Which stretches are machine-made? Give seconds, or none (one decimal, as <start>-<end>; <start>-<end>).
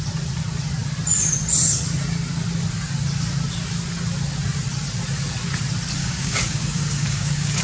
6.0-7.6